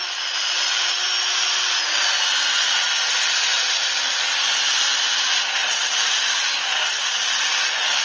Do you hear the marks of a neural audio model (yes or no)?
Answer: no